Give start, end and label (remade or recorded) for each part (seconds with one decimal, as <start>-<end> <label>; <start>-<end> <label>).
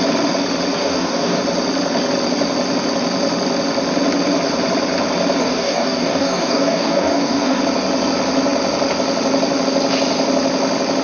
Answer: 0.0-0.8 recorded; 0.8-1.4 remade; 1.4-5.4 recorded; 5.4-7.6 remade; 7.6-11.0 recorded